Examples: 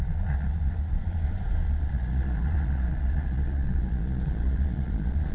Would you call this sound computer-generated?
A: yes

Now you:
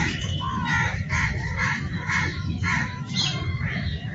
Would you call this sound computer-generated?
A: yes